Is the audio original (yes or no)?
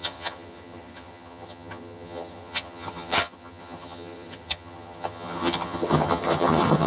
no